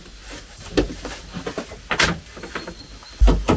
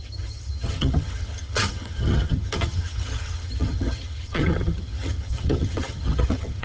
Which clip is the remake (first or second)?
second